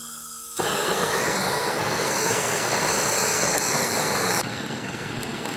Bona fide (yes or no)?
no